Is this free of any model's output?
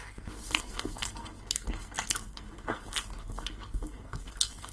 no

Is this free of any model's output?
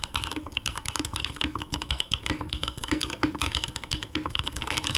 no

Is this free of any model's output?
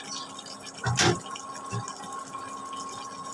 yes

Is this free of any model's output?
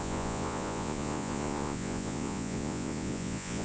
no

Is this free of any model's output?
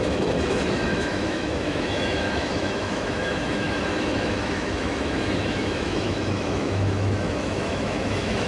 no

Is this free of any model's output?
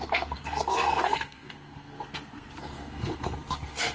no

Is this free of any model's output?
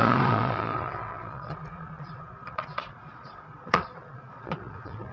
no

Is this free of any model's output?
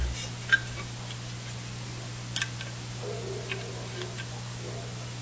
yes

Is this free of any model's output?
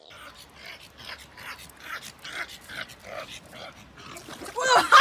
yes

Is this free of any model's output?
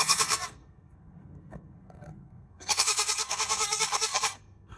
no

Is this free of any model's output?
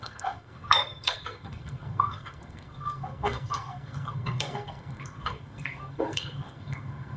no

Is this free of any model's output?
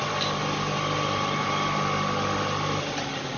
yes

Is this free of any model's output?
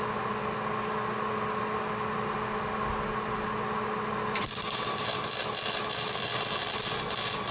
yes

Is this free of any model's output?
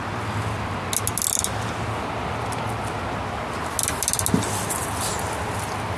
yes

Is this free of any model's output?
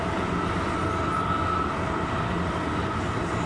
yes